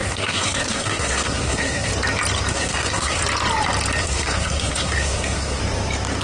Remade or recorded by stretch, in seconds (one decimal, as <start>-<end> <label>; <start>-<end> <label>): 0.0-1.9 remade; 1.9-2.5 recorded; 2.5-3.2 remade; 3.2-4.0 recorded; 4.0-5.6 remade; 5.6-6.2 recorded